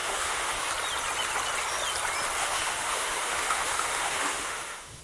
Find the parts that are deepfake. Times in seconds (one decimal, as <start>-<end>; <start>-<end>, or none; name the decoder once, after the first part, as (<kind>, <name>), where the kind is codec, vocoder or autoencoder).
0.0-0.7 (autoencoder, DAC-VAE); 2.4-5.0